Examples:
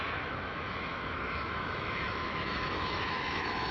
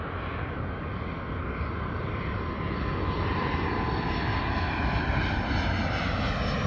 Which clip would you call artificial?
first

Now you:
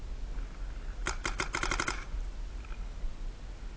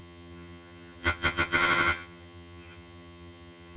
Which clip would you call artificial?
second